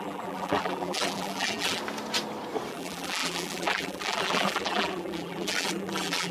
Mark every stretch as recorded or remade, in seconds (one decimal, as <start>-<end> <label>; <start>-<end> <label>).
0.0-1.8 remade; 1.8-2.7 recorded; 2.7-6.3 remade